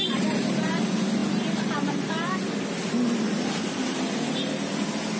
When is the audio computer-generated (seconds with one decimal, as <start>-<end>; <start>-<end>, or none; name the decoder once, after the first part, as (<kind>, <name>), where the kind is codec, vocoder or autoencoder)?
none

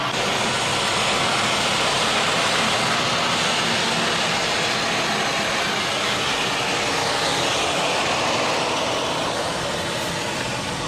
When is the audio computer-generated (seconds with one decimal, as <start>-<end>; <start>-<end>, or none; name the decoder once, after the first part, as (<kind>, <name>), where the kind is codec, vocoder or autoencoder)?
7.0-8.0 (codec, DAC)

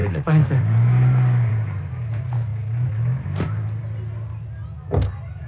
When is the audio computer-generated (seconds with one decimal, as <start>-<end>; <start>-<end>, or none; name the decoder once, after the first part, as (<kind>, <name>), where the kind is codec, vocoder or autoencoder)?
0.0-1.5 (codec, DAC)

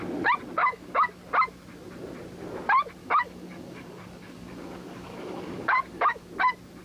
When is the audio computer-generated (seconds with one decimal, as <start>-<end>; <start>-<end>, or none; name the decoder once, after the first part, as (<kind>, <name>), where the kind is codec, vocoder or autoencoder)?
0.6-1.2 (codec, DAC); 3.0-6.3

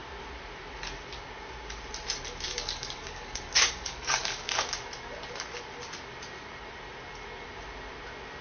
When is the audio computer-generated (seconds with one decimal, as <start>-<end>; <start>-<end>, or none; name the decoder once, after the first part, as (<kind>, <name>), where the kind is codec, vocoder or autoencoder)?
2.5-4.5 (codec, DAC)

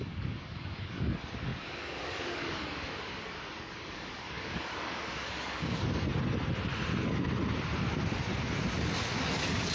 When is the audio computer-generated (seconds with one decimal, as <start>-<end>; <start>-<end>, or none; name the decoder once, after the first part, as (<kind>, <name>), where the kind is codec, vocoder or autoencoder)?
0.0-6.1 (codec, DAC); 9.1-9.7